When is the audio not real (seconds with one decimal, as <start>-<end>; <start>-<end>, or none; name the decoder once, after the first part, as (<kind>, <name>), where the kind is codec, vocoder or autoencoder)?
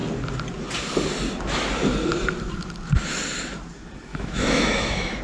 4.1-5.2 (autoencoder, DAC-VAE)